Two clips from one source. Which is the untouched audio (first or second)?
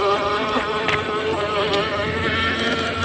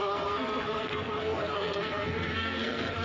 first